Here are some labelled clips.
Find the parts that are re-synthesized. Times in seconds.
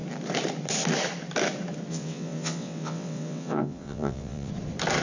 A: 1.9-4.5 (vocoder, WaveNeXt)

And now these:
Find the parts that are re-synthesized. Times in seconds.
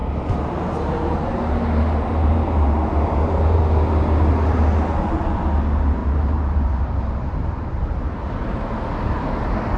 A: 0.0-3.6 (vocoder, BigVGAN v2); 6.0-7.0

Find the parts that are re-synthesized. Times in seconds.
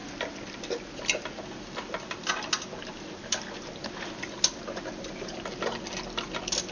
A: none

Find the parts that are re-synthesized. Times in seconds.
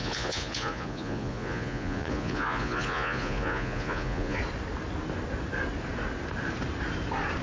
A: 0.0-4.4 (vocoder, Vocos)